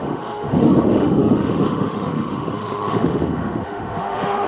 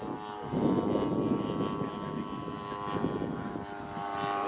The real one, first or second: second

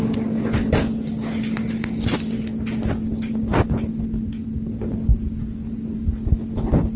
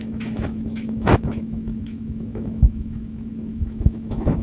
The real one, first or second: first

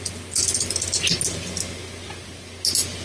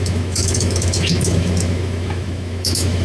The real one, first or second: first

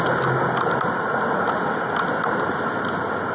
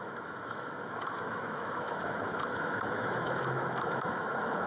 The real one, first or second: first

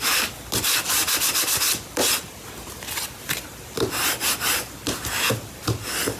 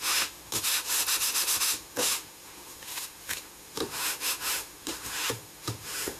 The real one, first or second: first